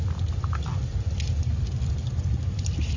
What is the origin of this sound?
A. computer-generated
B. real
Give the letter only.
B